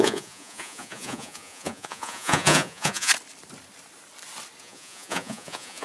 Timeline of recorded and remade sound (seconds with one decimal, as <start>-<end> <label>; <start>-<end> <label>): 0.0-3.1 remade; 3.1-4.6 recorded; 4.6-5.8 remade